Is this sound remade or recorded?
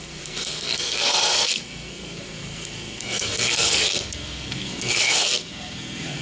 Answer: remade